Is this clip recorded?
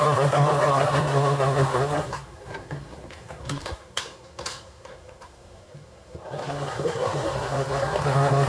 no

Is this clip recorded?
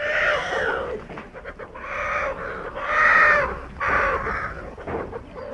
yes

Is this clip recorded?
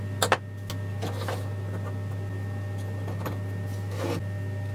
yes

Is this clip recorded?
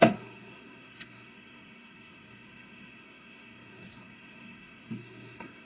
no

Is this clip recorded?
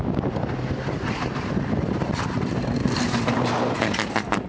yes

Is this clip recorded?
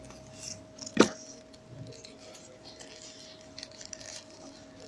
yes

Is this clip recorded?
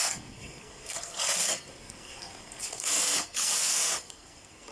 no